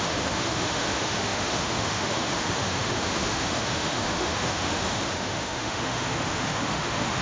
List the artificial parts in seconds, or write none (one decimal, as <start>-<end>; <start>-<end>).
0.0-7.2